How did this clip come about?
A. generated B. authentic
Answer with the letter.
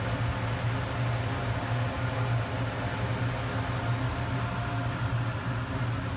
B